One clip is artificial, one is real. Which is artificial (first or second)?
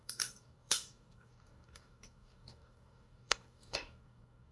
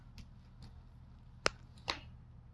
first